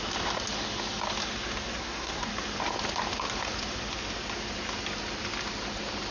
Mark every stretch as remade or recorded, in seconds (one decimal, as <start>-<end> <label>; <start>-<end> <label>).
0.0-1.8 recorded; 1.8-2.3 remade; 2.3-6.1 recorded